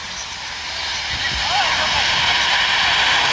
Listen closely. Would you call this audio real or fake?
real